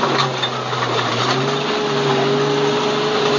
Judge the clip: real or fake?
real